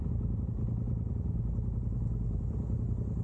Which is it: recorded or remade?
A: recorded